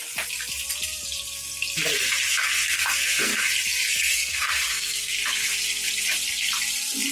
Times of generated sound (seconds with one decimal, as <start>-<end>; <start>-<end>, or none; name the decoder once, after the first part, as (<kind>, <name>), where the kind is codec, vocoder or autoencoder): 2.3-3.3 (codec, SNAC); 3.9-5.2